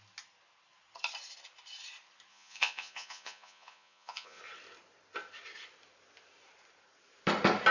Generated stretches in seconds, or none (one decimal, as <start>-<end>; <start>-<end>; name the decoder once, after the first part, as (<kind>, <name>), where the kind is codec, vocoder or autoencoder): 2.3-4.4 (vocoder, Vocos)